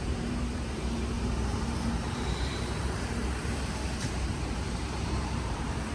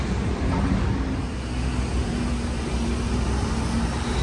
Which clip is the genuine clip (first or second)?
second